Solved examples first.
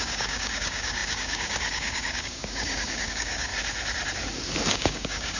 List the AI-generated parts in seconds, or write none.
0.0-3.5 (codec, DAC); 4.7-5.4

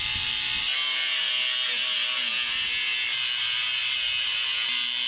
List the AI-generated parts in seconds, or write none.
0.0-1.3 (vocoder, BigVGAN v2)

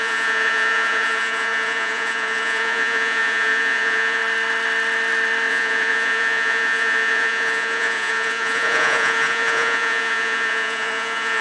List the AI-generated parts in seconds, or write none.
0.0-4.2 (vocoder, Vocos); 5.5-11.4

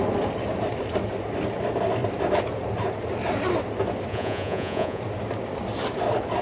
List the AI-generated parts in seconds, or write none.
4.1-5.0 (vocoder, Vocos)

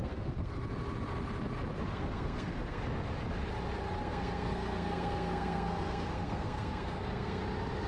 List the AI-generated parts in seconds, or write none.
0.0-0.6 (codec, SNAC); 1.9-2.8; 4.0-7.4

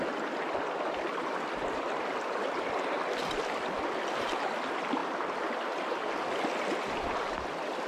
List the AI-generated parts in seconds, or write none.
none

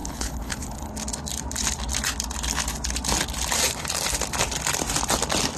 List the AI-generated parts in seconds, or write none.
0.0-0.9 (codec, HILCodec)

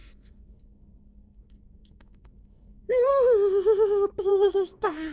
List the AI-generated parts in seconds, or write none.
0.0-3.1 (codec, SNAC); 4.3-5.1